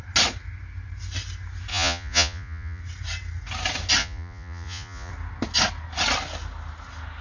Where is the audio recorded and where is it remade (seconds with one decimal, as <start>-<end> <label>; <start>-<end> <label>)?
0.0-1.7 recorded; 1.7-2.8 remade; 2.8-4.0 recorded; 4.0-5.1 remade; 5.1-7.2 recorded